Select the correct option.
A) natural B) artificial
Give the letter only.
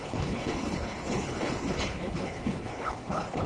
B